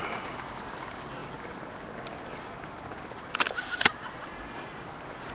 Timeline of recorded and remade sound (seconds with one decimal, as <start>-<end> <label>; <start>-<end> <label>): 0.0-5.3 recorded